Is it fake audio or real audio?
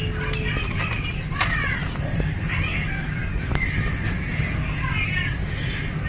real